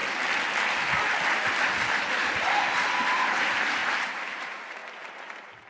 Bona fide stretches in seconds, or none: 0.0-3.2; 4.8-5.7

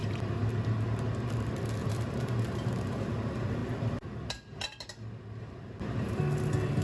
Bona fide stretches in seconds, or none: 0.5-1.8; 3.1-6.8

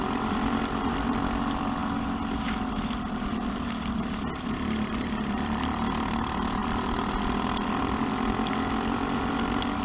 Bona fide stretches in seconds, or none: 1.8-3.3; 6.6-7.8

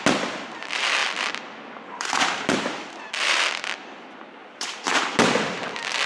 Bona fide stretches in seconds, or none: 0.0-1.0; 4.7-6.1

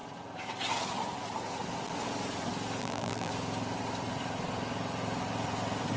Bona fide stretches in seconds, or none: 0.0-2.8; 3.3-6.0

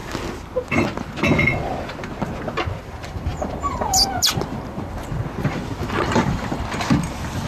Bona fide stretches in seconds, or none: 0.0-2.8

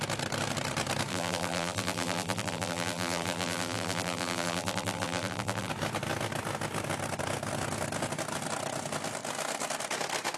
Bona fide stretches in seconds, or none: 0.0-1.1; 5.7-10.4

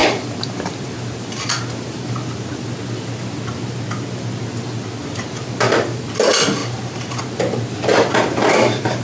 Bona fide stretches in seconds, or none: 2.7-5.0; 6.0-6.6; 7.2-9.0